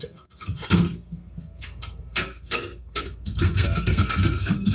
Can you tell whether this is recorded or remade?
remade